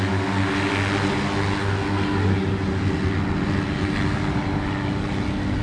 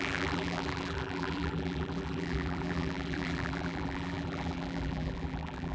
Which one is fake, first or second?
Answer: second